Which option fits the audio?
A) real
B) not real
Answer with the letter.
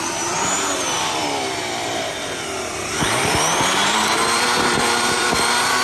B